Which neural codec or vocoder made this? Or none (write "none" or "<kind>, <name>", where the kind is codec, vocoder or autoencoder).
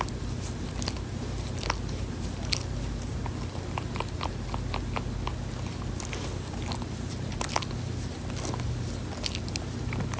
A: none